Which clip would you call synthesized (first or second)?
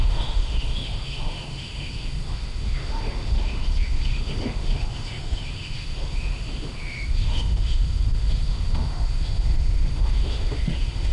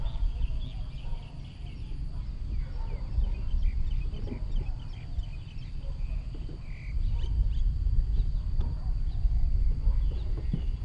first